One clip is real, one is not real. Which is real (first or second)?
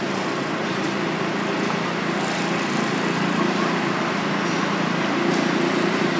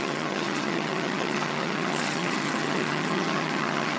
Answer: first